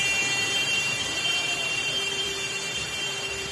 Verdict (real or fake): fake